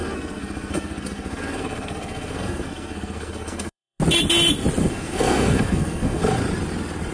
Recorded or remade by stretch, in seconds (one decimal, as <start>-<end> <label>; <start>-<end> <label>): 0.0-4.0 remade; 4.0-4.8 recorded; 4.8-6.2 remade; 6.2-7.1 recorded